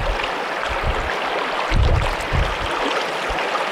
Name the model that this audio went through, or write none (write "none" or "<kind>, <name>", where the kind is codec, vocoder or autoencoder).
none